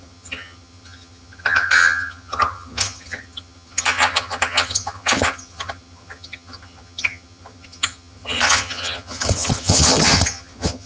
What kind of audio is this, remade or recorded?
remade